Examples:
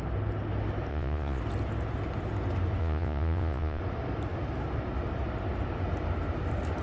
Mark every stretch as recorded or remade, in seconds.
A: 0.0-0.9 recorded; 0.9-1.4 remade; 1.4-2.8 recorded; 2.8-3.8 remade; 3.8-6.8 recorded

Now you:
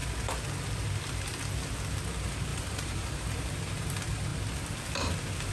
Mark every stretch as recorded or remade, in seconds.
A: 0.0-2.5 recorded; 2.5-3.4 remade; 3.4-5.5 recorded